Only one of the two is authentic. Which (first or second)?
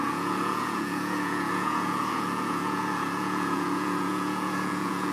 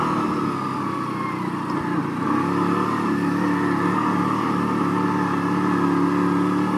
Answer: second